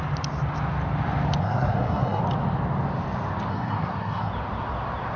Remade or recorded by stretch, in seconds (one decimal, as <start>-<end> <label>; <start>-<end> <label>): 0.0-1.4 recorded; 1.4-2.2 remade; 2.2-3.5 recorded; 3.5-4.3 remade; 4.3-5.2 recorded